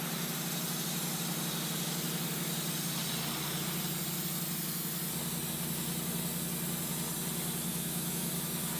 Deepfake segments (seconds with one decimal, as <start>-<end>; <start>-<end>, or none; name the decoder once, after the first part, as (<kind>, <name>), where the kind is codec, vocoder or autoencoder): 7.7-8.3 (autoencoder, DAC-VAE)